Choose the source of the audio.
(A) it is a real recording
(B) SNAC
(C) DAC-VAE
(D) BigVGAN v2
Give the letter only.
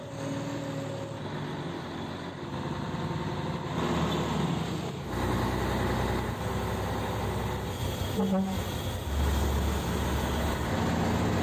A